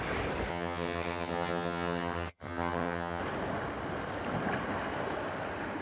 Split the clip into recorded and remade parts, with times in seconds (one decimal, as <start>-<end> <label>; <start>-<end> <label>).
0.0-0.5 recorded; 0.5-3.2 remade; 3.2-5.8 recorded